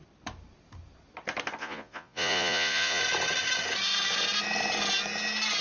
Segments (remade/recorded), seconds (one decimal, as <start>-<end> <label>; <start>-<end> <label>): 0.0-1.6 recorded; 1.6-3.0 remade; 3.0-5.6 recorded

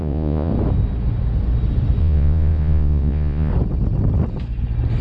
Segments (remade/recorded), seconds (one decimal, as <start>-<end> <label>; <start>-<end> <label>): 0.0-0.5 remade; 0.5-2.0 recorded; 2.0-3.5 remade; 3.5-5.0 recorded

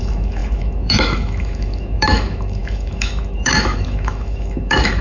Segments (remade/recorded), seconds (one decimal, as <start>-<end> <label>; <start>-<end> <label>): 0.0-5.0 remade